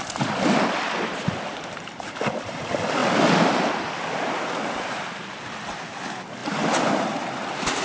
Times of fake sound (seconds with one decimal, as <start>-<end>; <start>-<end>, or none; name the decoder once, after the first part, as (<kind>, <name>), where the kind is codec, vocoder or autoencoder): none